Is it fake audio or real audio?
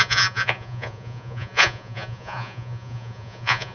fake